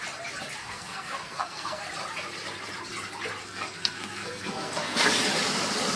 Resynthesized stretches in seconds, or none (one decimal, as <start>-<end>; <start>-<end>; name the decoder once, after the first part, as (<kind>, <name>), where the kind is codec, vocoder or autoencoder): 0.6-1.9 (codec, SNAC); 3.4-5.1